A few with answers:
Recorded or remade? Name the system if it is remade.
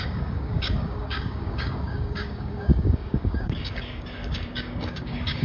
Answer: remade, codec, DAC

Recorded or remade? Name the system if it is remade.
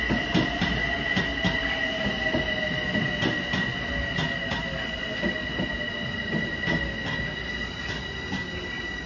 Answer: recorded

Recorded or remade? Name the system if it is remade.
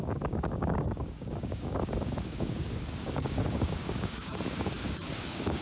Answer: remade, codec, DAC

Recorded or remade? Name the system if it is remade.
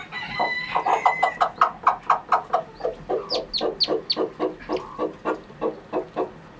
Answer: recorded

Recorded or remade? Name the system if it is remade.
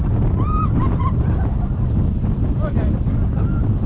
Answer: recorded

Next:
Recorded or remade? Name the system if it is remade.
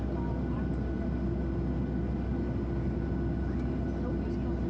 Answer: recorded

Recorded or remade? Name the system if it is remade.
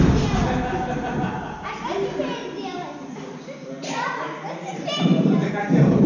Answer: recorded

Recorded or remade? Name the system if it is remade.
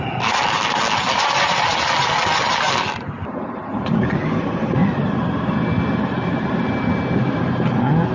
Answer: recorded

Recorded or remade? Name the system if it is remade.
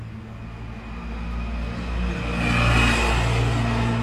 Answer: recorded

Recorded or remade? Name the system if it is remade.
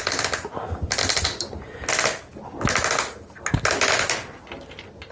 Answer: recorded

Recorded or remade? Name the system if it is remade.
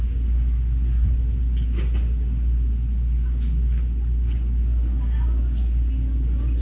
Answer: recorded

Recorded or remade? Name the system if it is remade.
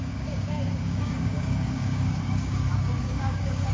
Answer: remade, codec, DAC